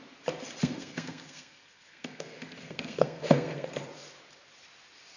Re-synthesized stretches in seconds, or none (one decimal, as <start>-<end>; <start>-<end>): 0.6-3.7